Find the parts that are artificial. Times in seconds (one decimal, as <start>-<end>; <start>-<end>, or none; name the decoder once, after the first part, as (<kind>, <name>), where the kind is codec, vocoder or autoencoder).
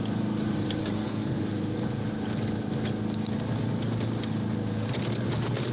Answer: 0.8-1.4 (codec, SNAC)